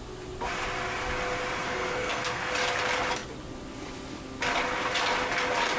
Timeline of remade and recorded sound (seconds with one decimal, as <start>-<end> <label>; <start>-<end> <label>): 0.0-1.6 recorded; 1.6-2.4 remade; 2.4-5.8 recorded